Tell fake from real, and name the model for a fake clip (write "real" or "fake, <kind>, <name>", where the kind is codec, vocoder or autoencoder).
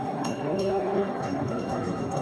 fake, codec, SNAC